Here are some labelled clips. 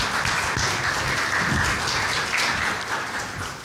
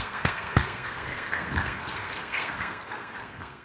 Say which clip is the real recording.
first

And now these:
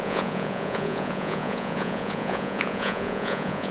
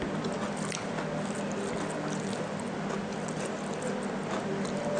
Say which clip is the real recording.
second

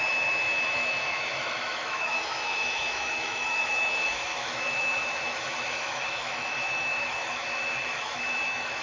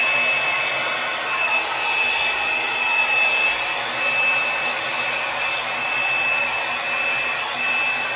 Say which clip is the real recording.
second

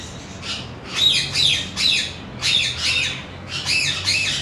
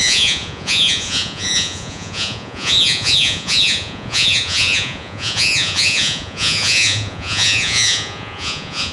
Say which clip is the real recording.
first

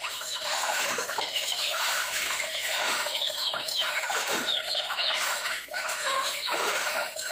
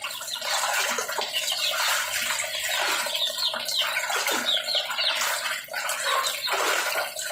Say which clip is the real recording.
second